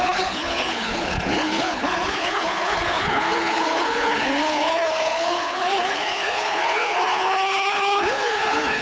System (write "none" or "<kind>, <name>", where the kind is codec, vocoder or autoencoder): codec, HILCodec